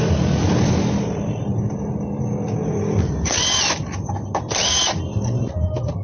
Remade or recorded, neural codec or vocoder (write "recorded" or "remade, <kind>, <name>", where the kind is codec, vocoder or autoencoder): recorded